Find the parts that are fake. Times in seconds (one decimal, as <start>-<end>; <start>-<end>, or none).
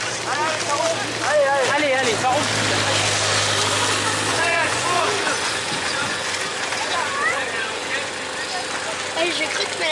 4.3-8.1